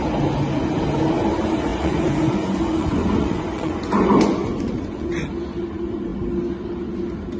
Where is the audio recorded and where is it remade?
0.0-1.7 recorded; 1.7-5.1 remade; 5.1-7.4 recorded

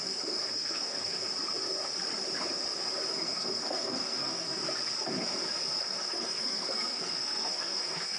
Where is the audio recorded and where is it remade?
0.0-1.3 remade; 1.3-3.1 recorded; 3.1-4.6 remade; 4.6-5.8 recorded; 5.8-8.2 remade

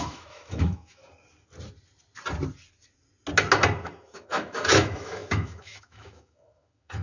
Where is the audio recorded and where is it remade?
0.0-1.0 remade; 1.0-3.8 recorded; 3.8-7.0 remade

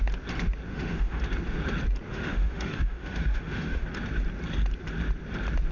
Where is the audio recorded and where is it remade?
0.0-0.7 recorded; 0.7-1.2 remade; 1.2-2.1 recorded; 2.1-3.8 remade; 3.8-5.7 recorded

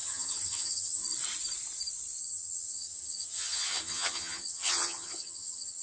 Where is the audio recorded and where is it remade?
0.0-1.0 remade; 1.0-2.2 recorded; 2.2-5.8 remade

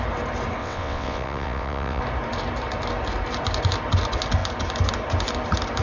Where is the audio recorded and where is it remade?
0.0-0.6 recorded; 0.6-2.0 remade; 2.0-5.8 recorded

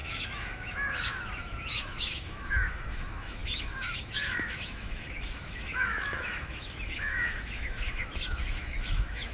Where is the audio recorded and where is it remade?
0.0-9.3 remade